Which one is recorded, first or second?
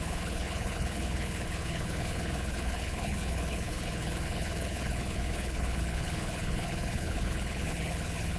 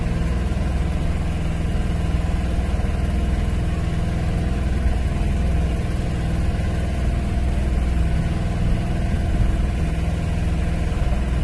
second